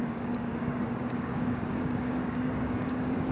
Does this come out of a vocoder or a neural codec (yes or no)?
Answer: yes